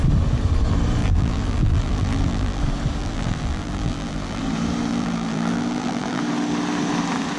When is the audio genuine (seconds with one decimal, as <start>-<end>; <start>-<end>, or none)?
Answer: 0.0-1.0; 2.6-3.0; 4.4-4.9; 6.2-7.4